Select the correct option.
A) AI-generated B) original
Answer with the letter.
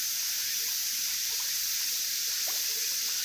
B